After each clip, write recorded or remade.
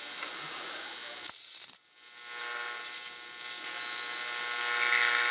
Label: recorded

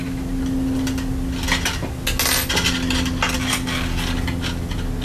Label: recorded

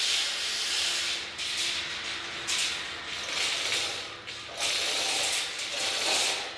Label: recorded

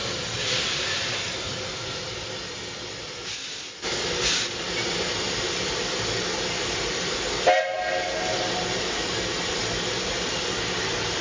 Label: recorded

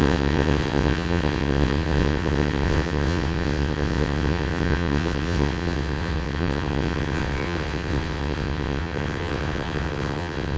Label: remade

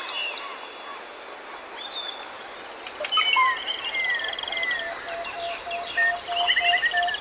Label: recorded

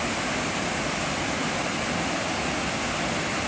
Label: recorded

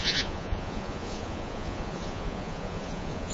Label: remade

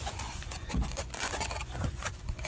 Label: remade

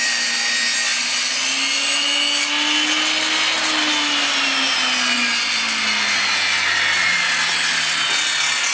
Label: recorded